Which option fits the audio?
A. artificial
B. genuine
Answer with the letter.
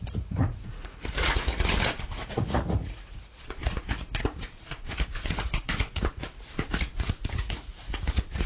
A